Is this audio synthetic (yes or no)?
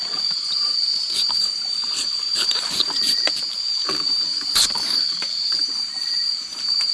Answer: yes